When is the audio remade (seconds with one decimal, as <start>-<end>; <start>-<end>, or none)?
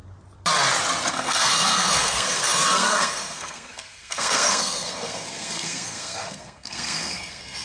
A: 1.1-7.6